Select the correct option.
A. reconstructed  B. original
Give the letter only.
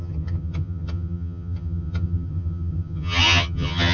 A